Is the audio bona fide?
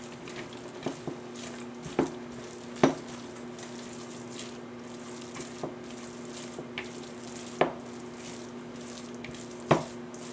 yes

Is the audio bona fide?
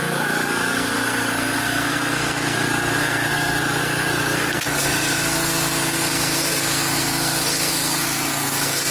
no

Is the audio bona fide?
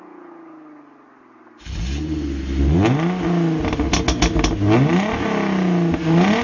yes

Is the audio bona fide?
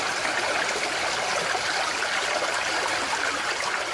yes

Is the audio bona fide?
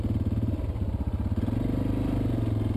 yes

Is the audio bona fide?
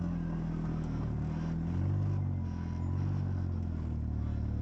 yes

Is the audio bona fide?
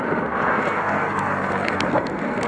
no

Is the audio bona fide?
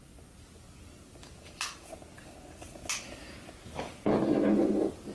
yes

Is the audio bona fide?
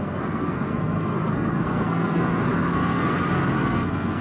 no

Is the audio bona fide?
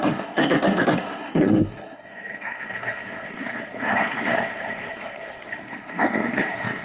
no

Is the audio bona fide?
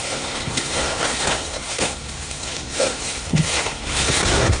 no